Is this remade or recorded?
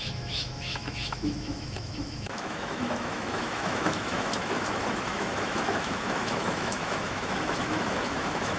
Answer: remade